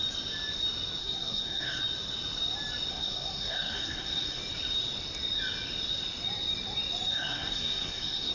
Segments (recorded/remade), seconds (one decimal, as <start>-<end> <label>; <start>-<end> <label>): 0.0-1.0 recorded; 1.0-1.8 remade; 1.8-2.9 recorded; 2.9-4.4 remade; 4.4-7.1 recorded; 7.1-8.3 remade